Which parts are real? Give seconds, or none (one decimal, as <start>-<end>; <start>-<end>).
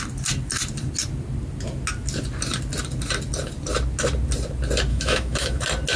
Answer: 0.0-4.9; 5.6-6.0